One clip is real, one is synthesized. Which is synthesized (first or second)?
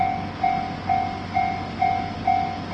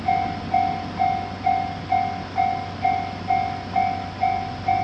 second